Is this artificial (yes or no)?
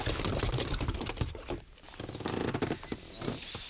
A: no